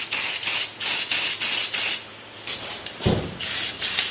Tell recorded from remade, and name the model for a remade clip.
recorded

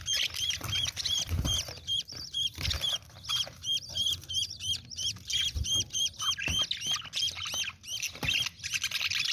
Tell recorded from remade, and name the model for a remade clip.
recorded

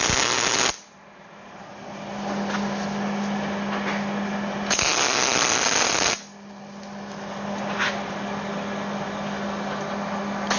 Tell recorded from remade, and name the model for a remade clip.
recorded